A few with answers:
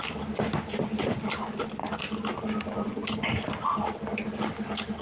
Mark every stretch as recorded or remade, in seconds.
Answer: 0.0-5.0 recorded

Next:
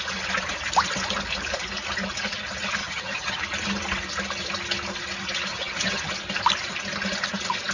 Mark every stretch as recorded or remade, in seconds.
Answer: 0.0-2.8 recorded; 2.8-3.4 remade; 3.4-5.5 recorded; 5.5-6.1 remade; 6.1-7.7 recorded